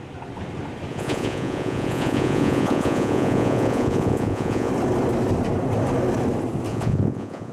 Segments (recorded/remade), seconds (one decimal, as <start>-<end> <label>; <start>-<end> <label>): 0.0-0.9 recorded; 0.9-4.7 remade; 4.7-6.7 recorded; 6.7-7.5 remade

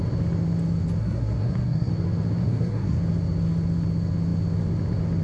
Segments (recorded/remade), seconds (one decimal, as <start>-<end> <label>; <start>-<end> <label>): 0.0-1.0 recorded; 1.0-1.9 remade; 1.9-2.4 recorded; 2.4-3.0 remade; 3.0-5.2 recorded

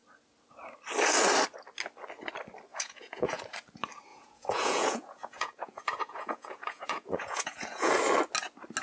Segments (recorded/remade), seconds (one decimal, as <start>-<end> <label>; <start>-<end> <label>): 0.0-2.7 recorded; 2.7-3.4 remade; 3.4-4.1 recorded; 4.1-7.9 remade; 7.9-8.8 recorded

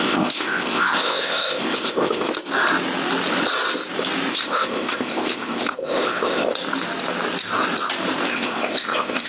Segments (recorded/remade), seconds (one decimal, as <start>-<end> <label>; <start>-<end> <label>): 0.0-2.3 remade; 2.3-4.3 recorded; 4.3-6.5 remade; 6.5-8.3 recorded; 8.3-9.3 remade